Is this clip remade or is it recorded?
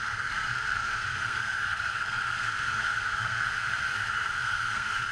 remade